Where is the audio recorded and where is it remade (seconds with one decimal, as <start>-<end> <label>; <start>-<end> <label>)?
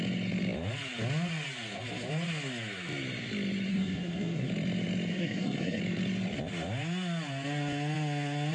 0.0-3.7 recorded; 3.7-4.5 remade; 4.5-5.1 recorded; 5.1-5.8 remade; 5.8-8.5 recorded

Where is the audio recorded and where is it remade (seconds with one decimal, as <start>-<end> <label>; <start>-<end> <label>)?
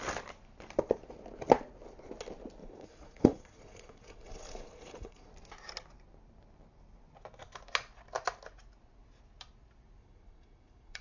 0.0-2.6 recorded; 2.6-5.3 remade; 5.3-10.0 recorded; 10.0-11.0 remade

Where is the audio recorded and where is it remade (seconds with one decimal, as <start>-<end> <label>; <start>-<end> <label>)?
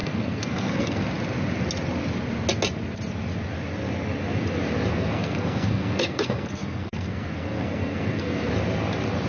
0.0-1.0 remade; 1.0-4.9 recorded; 4.9-8.5 remade; 8.5-9.3 recorded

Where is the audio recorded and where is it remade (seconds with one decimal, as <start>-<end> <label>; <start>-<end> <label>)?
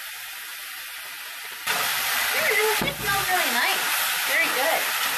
0.0-0.5 recorded; 0.5-3.0 remade; 3.0-5.2 recorded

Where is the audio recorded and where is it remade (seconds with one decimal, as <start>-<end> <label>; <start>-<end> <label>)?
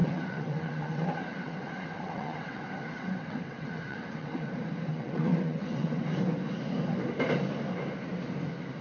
0.0-4.5 remade; 4.5-4.9 recorded; 4.9-6.0 remade; 6.0-8.8 recorded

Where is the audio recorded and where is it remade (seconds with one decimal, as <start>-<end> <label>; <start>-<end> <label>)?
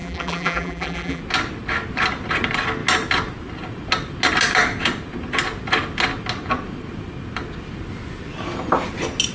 0.0-1.2 remade; 1.2-9.3 recorded